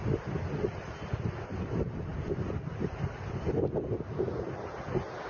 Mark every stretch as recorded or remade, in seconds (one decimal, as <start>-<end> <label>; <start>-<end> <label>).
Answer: 0.0-5.3 recorded